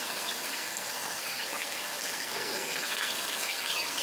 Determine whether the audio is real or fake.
fake